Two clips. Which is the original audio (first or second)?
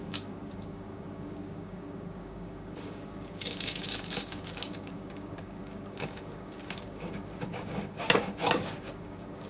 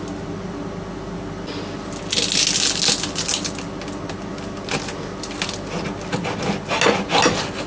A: second